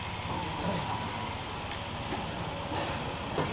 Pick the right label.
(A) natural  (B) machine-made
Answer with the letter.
A